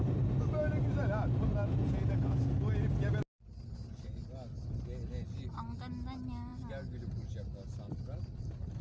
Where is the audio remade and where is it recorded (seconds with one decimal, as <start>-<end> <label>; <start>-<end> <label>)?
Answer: 0.0-8.8 recorded

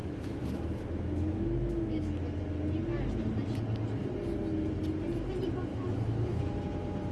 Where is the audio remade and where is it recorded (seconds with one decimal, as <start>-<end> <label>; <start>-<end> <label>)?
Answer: 0.0-2.4 remade; 2.4-5.7 recorded; 5.7-6.4 remade; 6.4-7.1 recorded

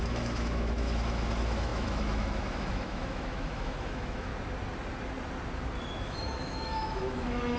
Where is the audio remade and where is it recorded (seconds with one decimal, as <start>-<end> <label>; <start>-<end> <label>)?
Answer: 0.0-4.3 remade; 4.3-5.9 recorded; 5.9-7.6 remade

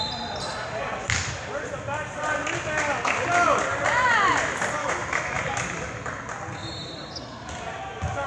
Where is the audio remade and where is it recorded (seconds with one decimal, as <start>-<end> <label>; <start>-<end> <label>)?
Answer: 0.0-4.8 recorded; 4.8-5.4 remade; 5.4-8.3 recorded

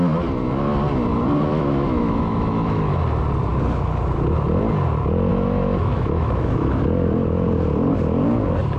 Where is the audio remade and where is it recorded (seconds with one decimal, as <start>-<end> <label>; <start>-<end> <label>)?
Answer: 0.0-1.5 recorded; 1.5-3.0 remade; 3.0-5.3 recorded; 5.3-6.8 remade; 6.8-8.8 recorded

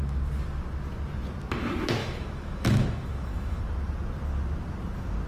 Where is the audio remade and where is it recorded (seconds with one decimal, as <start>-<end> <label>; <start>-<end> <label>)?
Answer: 0.0-2.0 recorded; 2.0-3.6 remade; 3.6-5.3 recorded